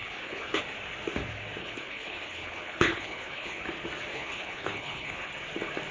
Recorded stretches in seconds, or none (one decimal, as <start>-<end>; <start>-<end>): 0.6-1.6; 3.6-4.1; 5.3-5.9